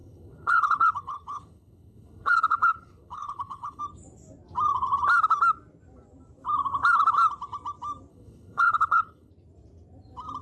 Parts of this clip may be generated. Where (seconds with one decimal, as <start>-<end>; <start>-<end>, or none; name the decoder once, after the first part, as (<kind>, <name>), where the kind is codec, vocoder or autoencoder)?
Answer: 0.0-3.8 (codec, HILCodec); 8.1-9.3